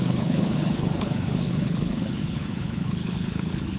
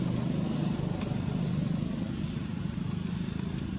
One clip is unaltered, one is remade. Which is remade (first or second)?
first